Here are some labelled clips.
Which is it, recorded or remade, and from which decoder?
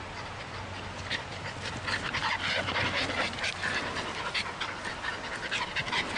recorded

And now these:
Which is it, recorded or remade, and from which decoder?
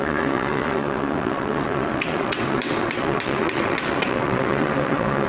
remade, vocoder, WaveNeXt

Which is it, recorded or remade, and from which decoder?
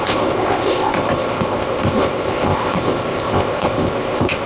remade, codec, ZipCodec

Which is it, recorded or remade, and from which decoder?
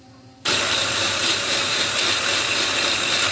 remade, vocoder, BigVGAN v2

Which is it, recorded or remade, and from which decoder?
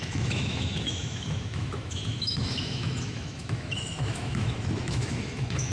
remade, autoencoder, DAC-VAE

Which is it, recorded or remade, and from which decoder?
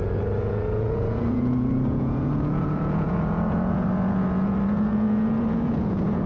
remade, vocoder, Vocos